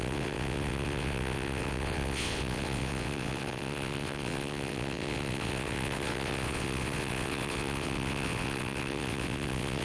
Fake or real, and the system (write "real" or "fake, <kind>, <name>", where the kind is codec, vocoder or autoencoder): fake, vocoder, WaveNeXt